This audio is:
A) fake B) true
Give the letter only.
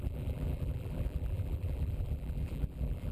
A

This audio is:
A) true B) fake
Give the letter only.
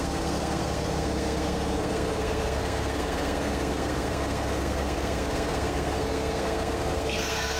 B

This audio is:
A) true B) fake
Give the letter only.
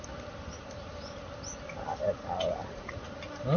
A